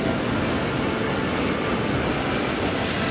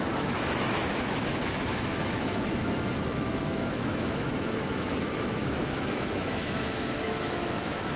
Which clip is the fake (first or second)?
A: second